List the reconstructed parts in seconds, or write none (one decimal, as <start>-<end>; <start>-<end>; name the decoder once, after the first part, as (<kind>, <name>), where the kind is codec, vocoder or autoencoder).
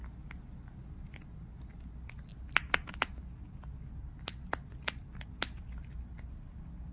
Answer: none